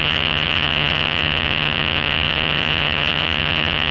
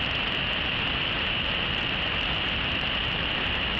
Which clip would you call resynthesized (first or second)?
first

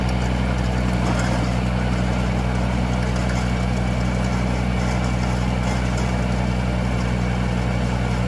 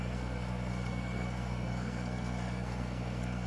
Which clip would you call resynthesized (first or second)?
second